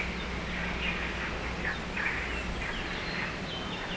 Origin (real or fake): real